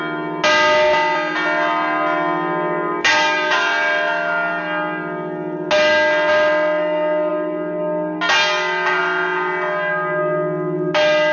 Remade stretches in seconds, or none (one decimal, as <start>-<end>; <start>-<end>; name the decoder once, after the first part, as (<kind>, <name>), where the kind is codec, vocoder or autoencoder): none